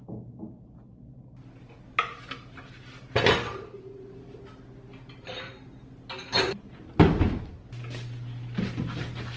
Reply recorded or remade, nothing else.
recorded